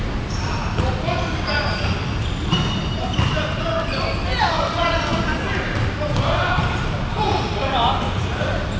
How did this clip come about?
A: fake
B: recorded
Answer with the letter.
B